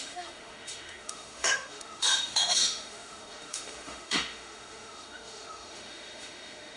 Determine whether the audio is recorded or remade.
remade